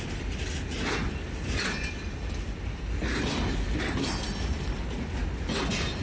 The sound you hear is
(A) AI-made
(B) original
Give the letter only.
B